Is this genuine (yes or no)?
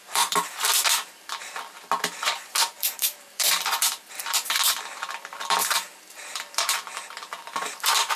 no